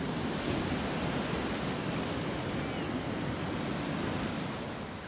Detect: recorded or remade recorded